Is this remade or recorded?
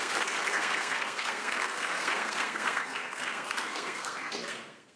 remade